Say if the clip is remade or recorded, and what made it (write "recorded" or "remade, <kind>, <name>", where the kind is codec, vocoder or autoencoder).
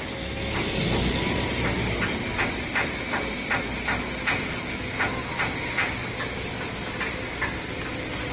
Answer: recorded